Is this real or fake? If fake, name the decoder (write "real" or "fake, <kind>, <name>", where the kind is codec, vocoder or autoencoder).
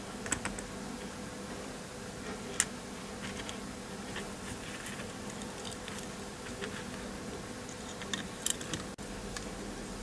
real